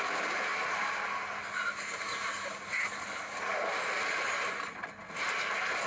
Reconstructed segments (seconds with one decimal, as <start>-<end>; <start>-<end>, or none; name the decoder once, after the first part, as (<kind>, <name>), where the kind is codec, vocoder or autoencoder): none